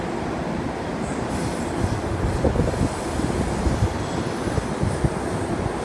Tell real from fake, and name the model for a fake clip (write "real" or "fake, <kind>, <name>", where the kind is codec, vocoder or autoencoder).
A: real